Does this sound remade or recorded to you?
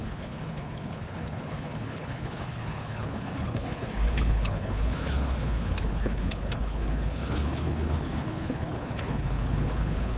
remade